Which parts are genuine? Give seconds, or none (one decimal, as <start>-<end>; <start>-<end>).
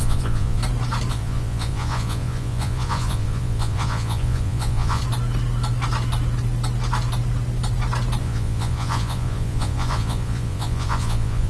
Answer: 0.6-1.1; 5.0-8.2